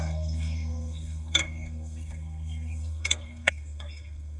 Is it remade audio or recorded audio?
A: remade